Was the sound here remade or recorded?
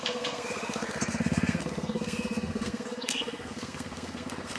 remade